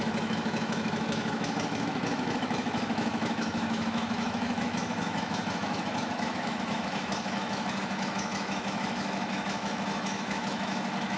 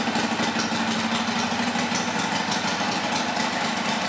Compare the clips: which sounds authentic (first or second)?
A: second